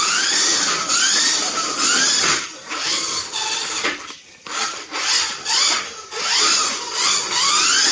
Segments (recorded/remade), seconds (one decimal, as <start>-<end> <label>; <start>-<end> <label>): 0.0-0.5 recorded; 0.5-4.5 remade; 4.5-7.9 recorded